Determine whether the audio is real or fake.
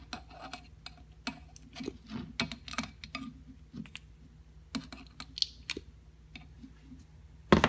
real